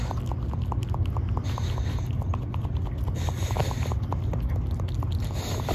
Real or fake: real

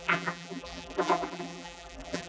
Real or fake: fake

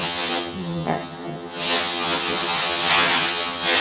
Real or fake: fake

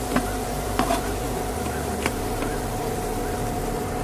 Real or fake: fake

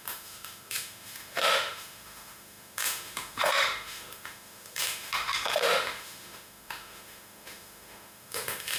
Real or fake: fake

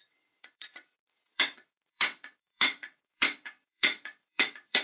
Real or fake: fake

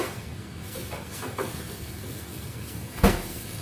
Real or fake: fake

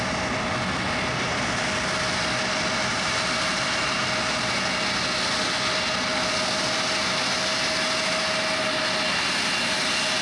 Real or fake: real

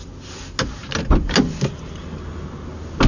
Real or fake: real